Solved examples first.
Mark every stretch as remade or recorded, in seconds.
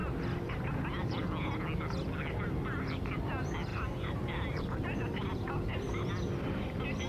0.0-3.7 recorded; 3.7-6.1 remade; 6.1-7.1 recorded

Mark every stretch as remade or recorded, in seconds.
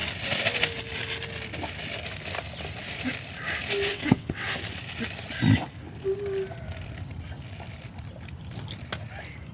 0.0-3.9 recorded; 3.9-4.6 remade; 4.6-9.5 recorded